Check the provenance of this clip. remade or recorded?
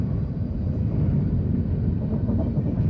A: recorded